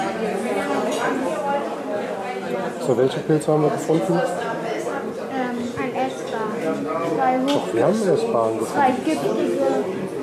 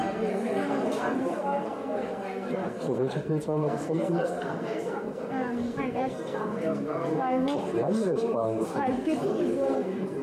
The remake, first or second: second